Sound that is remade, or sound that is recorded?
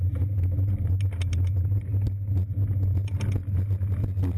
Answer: recorded